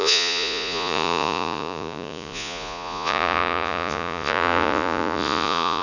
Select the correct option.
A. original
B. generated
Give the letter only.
B